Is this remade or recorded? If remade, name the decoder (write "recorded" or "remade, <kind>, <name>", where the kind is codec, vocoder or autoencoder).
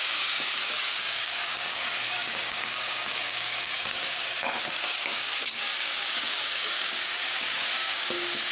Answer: remade, codec, DAC